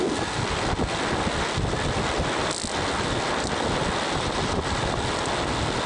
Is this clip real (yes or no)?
yes